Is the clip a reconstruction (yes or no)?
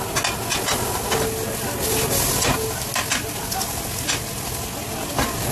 no